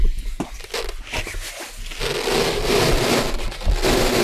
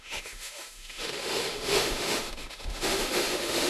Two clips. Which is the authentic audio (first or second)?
first